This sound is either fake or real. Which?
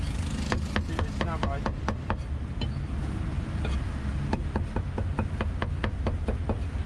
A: real